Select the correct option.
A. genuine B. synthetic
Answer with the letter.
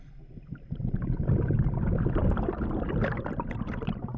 A